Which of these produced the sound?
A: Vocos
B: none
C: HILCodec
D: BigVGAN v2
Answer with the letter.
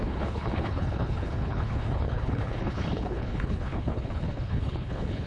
C